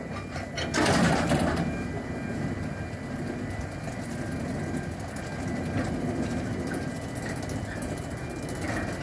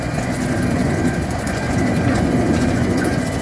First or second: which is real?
first